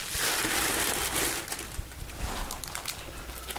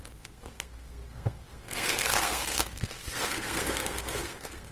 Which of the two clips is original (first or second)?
first